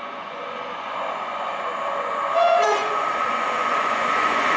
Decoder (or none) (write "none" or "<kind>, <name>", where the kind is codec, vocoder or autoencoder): vocoder, Vocos